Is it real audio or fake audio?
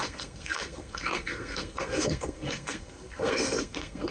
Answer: fake